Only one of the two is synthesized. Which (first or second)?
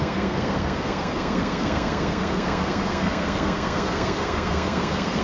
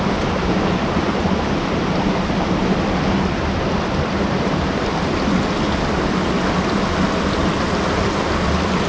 first